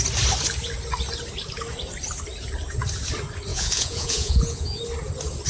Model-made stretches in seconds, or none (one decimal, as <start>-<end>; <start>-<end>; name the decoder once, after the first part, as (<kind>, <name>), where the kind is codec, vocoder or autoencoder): 3.5-4.8 (vocoder, Vocos)